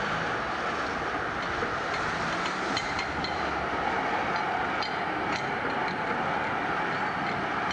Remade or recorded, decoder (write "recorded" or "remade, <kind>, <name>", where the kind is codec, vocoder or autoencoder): recorded